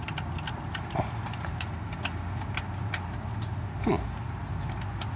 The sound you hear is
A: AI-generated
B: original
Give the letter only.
B